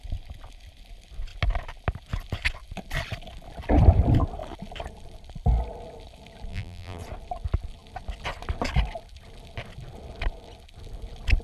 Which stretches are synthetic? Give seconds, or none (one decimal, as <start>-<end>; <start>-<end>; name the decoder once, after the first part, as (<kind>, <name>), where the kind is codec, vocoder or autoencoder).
6.5-7.0 (vocoder, BigVGAN v2)